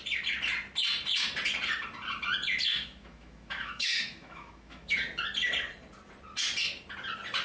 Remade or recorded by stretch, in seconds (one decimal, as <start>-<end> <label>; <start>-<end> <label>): 0.0-2.7 recorded; 2.7-4.9 remade; 4.9-7.4 recorded

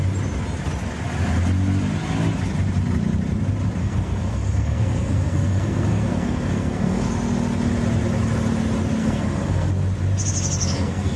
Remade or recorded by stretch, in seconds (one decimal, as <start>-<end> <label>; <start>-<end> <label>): 0.0-3.8 recorded; 3.8-7.1 remade; 7.1-9.0 recorded; 9.0-9.7 remade; 9.7-10.6 recorded; 10.6-11.2 remade

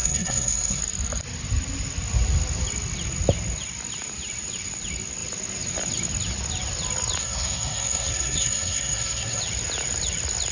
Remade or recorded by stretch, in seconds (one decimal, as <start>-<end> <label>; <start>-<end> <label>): 0.0-0.8 remade; 0.8-7.2 recorded; 7.2-9.4 remade; 9.4-10.5 recorded

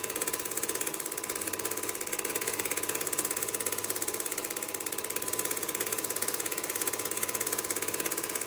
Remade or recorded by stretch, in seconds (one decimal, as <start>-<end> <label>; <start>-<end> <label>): 0.0-0.9 remade; 0.9-2.3 recorded; 2.3-4.4 remade; 4.4-5.3 recorded; 5.3-8.5 remade

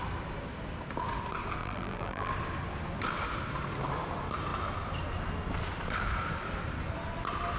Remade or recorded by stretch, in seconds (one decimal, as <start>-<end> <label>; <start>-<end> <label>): 0.0-1.6 recorded; 1.6-2.3 remade; 2.3-7.6 recorded

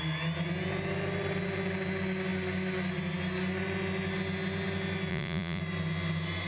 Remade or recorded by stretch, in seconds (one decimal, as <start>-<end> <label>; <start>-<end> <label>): 0.0-5.1 recorded; 5.1-5.6 remade; 5.6-6.5 recorded

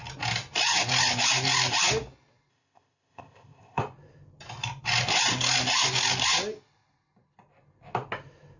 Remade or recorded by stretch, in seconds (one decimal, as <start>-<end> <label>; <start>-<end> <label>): 0.0-2.5 recorded; 2.5-3.8 remade; 3.8-8.6 recorded

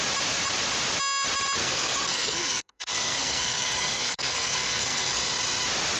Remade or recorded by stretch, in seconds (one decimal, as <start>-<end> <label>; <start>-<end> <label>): 0.0-1.6 recorded; 1.6-5.2 remade; 5.2-6.0 recorded